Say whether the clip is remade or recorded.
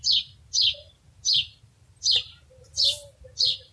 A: recorded